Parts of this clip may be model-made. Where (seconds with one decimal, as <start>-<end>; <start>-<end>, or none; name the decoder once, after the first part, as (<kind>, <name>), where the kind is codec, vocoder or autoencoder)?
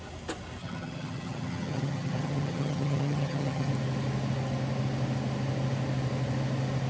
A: 0.6-3.7 (vocoder, HiFi-GAN)